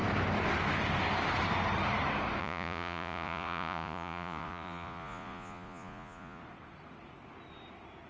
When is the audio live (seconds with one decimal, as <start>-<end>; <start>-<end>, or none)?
0.0-2.4; 6.4-8.1